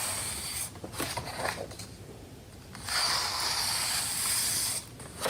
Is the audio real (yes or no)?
yes